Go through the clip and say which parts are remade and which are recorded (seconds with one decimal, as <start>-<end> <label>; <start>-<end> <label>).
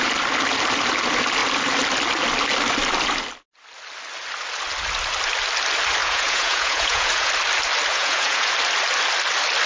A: 0.0-6.0 recorded; 6.0-7.3 remade; 7.3-7.9 recorded; 7.9-8.5 remade; 8.5-9.7 recorded